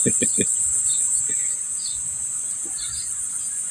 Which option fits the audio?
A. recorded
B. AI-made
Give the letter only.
B